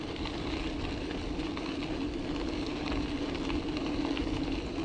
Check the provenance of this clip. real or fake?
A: real